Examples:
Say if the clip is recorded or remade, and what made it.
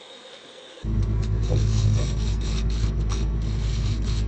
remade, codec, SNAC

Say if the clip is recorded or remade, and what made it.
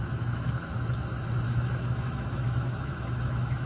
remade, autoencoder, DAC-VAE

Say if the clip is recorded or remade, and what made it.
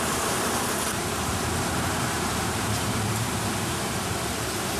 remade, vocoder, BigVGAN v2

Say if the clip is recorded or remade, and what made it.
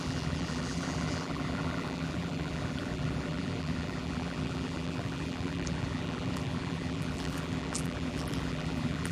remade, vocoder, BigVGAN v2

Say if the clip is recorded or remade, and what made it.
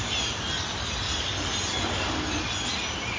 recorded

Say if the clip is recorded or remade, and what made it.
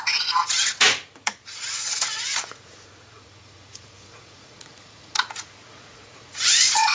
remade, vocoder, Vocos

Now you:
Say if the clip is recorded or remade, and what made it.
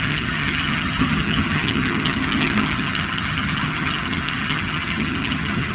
remade, vocoder, HiFi-GAN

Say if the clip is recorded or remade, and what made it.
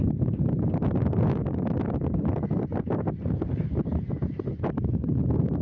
recorded